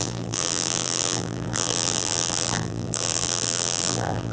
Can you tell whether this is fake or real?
fake